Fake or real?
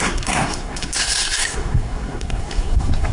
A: fake